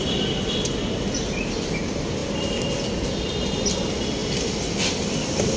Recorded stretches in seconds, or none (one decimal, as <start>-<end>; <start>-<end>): 0.0-5.6